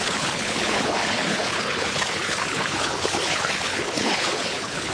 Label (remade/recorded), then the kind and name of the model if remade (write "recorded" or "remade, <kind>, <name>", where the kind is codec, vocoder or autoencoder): remade, codec, HILCodec